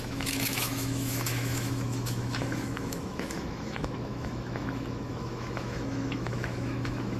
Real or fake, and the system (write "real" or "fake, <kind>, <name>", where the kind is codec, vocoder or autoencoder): fake, autoencoder, DAC-VAE